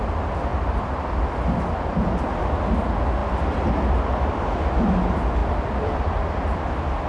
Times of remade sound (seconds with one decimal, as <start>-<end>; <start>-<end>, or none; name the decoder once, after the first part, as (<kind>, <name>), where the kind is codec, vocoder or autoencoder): 0.5-2.4 (vocoder, BigVGAN v2); 3.2-4.8; 5.4-6.1